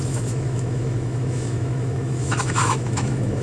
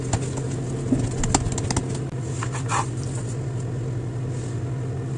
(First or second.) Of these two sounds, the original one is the second